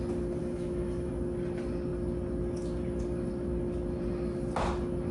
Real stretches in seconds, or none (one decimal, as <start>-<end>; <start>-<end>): 0.0-0.4; 1.1-5.1